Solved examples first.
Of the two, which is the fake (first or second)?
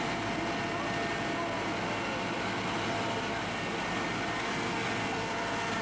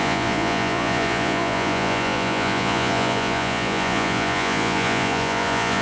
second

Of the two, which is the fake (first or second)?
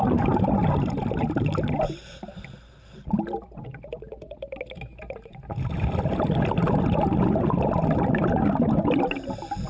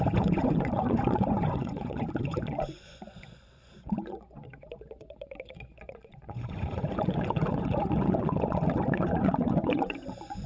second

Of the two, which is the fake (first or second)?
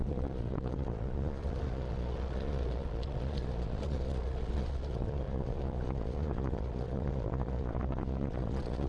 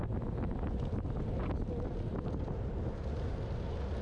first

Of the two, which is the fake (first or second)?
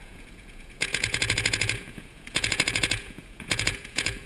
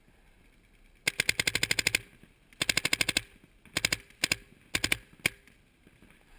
first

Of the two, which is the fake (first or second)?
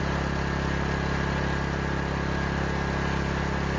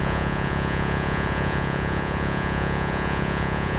second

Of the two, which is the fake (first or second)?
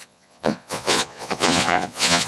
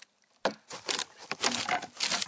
first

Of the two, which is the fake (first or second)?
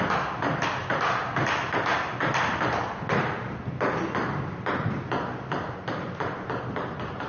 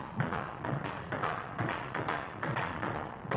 second